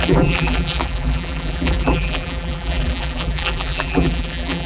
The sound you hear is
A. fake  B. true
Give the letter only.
A